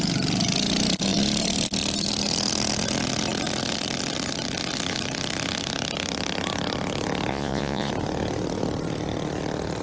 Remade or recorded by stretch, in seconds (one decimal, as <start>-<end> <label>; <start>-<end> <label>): 0.0-7.3 recorded; 7.3-7.9 remade; 7.9-9.8 recorded